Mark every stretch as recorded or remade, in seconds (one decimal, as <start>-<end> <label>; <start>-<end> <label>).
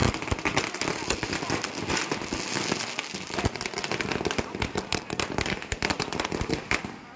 0.0-7.2 recorded